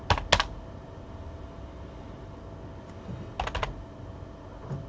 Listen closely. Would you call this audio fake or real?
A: real